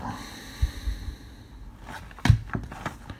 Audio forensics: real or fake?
real